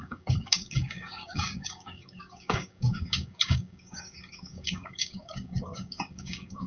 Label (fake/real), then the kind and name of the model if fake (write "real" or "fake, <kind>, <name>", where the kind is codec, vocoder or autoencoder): fake, codec, DAC